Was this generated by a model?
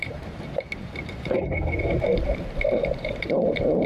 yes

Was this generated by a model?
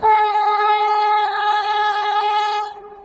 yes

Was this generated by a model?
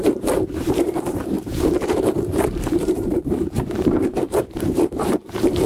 yes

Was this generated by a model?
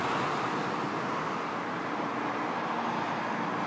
no